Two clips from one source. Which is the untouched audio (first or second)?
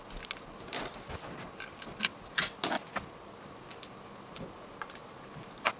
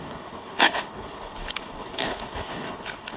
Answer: first